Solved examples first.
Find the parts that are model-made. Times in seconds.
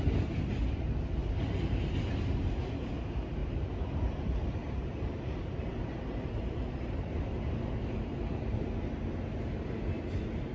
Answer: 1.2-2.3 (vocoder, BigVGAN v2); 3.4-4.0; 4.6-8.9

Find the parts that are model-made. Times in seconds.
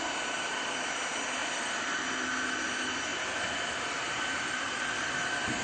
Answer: 1.4-2.1 (vocoder, BigVGAN v2); 3.1-4.9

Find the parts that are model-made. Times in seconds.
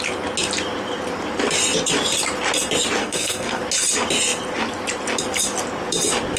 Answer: 3.0-3.6 (codec, SNAC)